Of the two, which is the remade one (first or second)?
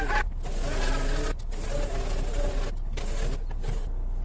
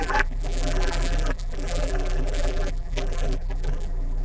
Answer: second